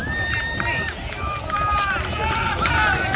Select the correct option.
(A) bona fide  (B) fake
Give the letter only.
A